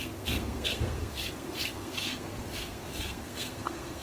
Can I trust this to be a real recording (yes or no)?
no